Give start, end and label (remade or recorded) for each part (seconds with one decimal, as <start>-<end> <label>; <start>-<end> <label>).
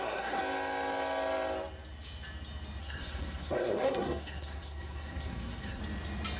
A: 0.0-0.4 remade; 0.4-2.8 recorded; 2.8-5.8 remade; 5.8-6.4 recorded